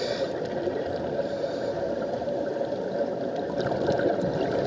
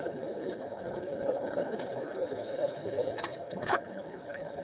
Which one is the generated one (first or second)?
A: second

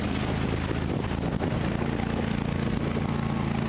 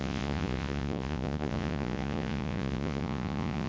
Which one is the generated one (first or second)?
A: second